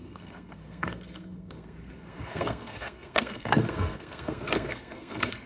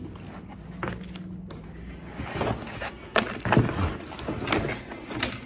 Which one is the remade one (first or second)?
first